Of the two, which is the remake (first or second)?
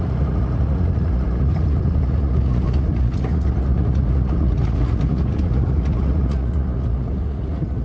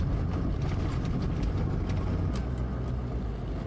first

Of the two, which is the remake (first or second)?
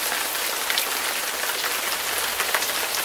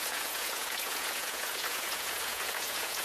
second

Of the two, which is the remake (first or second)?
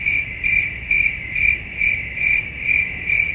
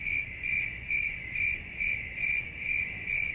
second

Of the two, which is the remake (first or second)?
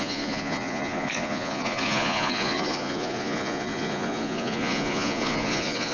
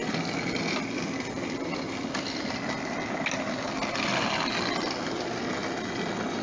first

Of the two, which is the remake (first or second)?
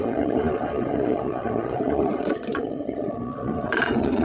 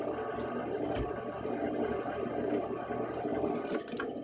first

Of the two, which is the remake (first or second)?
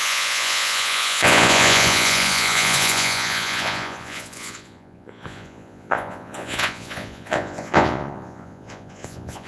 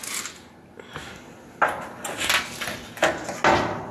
first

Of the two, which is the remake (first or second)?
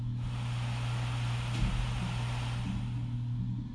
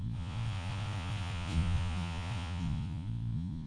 second